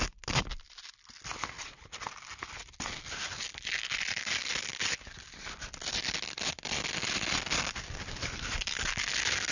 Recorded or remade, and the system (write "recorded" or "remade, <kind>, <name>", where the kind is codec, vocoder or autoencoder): recorded